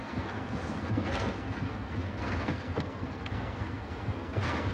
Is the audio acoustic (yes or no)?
no